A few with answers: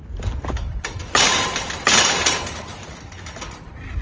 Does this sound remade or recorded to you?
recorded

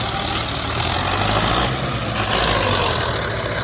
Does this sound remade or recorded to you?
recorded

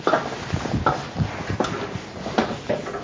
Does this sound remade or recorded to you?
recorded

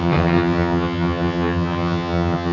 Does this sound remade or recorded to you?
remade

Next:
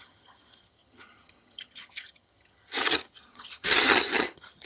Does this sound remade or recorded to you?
remade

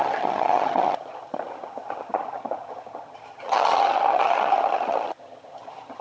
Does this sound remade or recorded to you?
remade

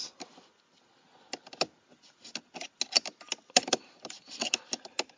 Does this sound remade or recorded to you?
recorded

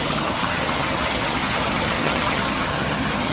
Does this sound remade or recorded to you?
remade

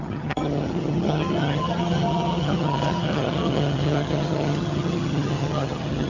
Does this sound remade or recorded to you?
remade